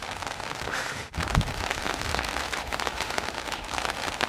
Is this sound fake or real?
fake